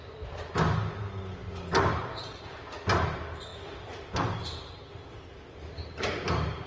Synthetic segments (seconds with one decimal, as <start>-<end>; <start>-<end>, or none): none